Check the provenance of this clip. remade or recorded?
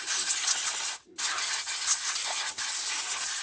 recorded